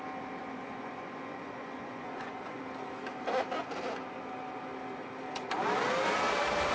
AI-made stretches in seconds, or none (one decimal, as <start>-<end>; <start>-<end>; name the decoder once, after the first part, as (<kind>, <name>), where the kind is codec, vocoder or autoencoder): 0.4-2.6 (vocoder, Vocos)